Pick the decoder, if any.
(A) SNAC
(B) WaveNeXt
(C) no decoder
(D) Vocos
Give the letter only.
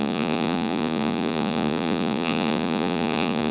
D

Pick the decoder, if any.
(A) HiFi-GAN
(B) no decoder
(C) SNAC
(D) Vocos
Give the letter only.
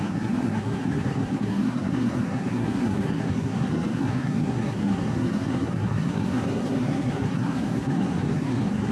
C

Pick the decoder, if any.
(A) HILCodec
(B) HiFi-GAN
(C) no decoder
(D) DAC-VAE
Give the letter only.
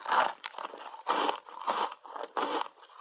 C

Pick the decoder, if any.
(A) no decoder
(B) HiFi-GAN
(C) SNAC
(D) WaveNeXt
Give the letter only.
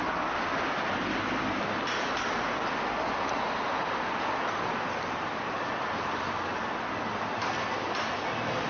A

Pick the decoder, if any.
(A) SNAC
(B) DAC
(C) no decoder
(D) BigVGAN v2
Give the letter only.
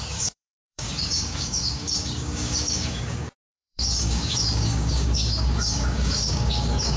B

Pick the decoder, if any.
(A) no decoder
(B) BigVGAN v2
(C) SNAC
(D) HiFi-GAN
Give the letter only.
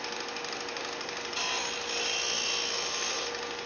A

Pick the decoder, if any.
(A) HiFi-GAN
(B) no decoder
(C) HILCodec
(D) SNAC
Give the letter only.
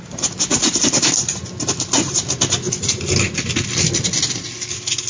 B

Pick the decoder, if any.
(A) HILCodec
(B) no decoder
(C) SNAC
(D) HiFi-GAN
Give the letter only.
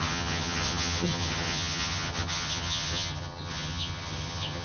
D